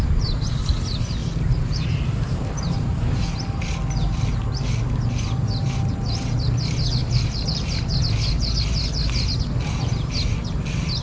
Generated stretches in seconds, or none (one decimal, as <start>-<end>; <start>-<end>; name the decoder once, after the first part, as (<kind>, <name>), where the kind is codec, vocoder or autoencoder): 1.2-3.6 (vocoder, BigVGAN v2); 5.6-6.4; 7.0-7.9